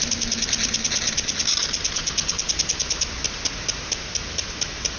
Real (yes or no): yes